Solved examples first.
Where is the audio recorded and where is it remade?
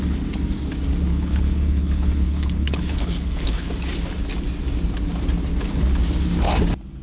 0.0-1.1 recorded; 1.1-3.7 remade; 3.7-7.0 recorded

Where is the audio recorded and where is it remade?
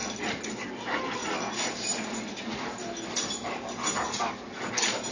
0.0-5.1 recorded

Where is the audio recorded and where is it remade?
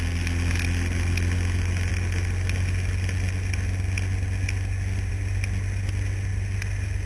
0.0-7.1 recorded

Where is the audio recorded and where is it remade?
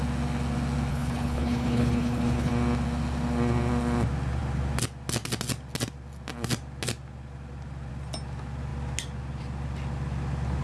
0.0-0.9 recorded; 0.9-2.5 remade; 2.5-10.6 recorded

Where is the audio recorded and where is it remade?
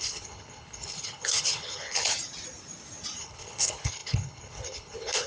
0.0-2.1 remade; 2.1-3.2 recorded; 3.2-5.3 remade